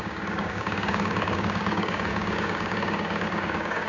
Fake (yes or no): yes